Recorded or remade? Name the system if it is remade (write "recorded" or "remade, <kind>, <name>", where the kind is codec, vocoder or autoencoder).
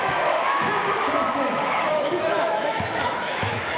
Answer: remade, autoencoder, DAC-VAE